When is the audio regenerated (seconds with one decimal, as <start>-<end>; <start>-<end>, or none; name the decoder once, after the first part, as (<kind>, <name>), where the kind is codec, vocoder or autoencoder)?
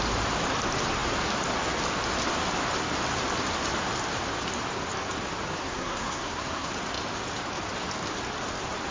5.6-6.7 (codec, SNAC)